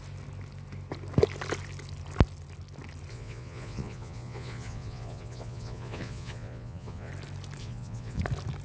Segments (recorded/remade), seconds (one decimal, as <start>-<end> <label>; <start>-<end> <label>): 0.0-3.1 recorded; 3.1-7.1 remade; 7.1-7.6 recorded; 7.6-8.2 remade; 8.2-8.6 recorded